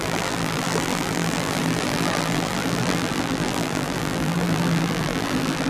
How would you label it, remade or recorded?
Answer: remade